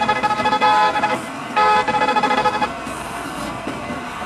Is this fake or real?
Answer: fake